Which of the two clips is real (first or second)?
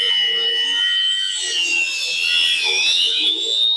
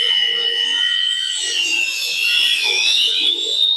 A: first